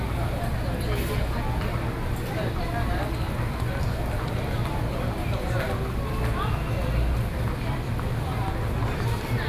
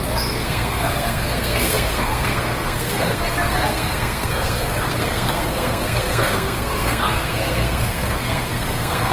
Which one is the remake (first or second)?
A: second